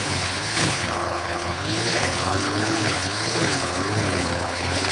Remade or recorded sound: remade